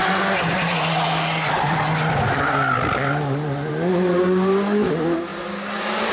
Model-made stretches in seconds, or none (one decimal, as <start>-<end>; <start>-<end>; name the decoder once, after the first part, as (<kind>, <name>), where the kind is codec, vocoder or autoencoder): none